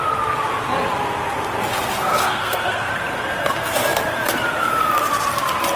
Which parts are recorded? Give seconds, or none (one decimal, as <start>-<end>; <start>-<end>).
0.0-2.1; 2.9-5.8